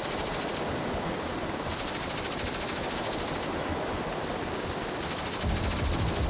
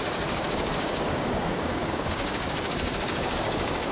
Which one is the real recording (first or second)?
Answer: first